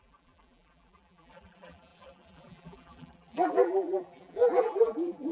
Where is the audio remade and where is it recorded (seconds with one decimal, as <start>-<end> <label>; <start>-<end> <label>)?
0.0-5.3 remade